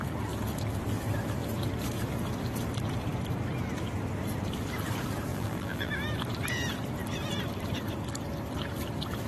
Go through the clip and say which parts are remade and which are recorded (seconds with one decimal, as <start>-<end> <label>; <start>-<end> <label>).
0.0-5.3 recorded; 5.3-5.9 remade; 5.9-9.3 recorded